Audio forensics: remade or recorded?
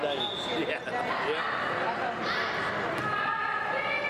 recorded